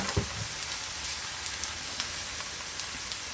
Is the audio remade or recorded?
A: recorded